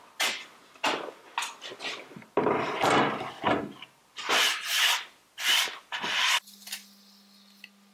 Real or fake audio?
real